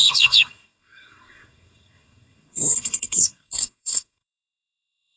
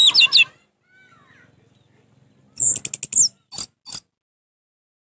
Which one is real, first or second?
second